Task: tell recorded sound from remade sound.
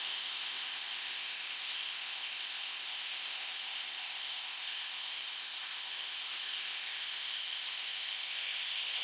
remade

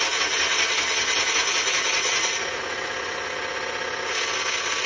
recorded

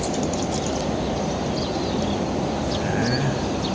recorded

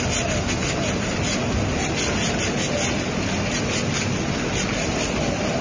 recorded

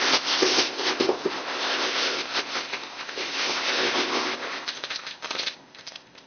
remade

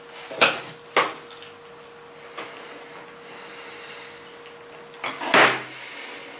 recorded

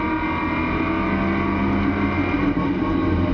recorded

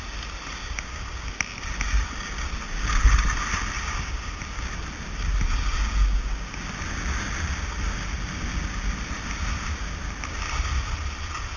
recorded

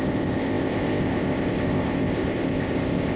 remade